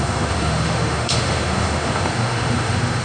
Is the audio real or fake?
fake